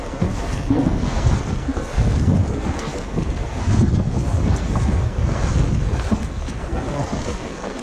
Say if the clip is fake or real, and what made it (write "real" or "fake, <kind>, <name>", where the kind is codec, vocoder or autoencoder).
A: fake, codec, SNAC